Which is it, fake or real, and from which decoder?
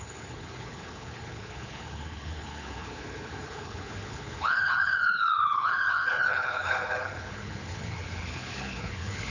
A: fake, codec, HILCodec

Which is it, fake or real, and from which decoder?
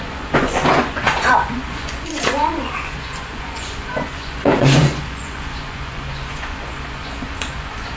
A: fake, vocoder, Vocos